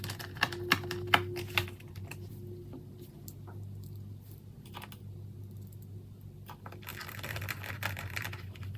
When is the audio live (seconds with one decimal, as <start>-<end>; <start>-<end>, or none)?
0.0-6.9; 7.5-8.8